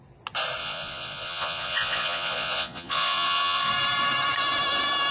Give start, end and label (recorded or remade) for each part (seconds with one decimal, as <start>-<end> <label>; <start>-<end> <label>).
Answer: 0.0-0.6 recorded; 0.6-3.7 remade; 3.7-5.1 recorded